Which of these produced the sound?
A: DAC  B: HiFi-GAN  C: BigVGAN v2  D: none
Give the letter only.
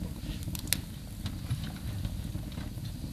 D